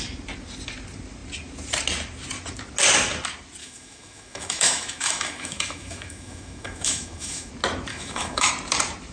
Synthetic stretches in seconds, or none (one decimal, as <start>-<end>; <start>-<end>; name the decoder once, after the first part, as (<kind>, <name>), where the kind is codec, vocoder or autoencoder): 3.6-7.5 (autoencoder, DAC-VAE); 7.9-8.5